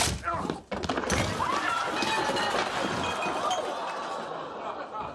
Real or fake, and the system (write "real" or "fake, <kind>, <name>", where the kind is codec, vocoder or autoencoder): real